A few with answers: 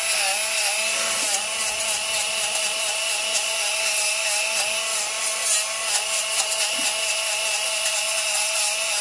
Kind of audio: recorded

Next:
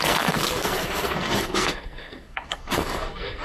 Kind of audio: remade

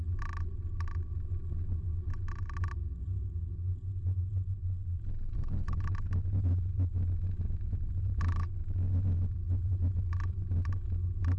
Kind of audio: recorded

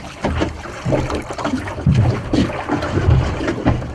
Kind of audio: recorded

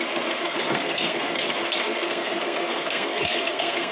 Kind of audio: remade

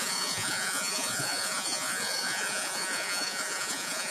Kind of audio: remade